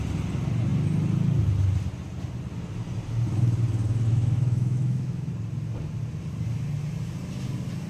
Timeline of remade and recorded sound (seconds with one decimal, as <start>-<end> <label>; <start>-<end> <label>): 0.0-4.1 recorded; 4.1-5.3 remade; 5.3-7.9 recorded